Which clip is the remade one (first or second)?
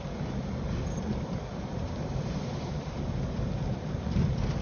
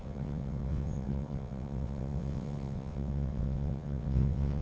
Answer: second